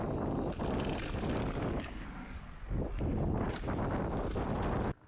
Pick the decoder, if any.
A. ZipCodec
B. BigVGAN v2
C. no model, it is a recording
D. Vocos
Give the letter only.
C